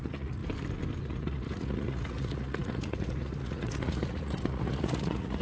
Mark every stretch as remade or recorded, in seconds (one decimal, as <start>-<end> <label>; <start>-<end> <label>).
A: 0.0-0.4 remade; 0.4-1.0 recorded; 1.0-5.4 remade